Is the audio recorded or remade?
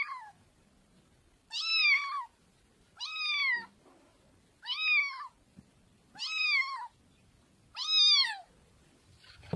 recorded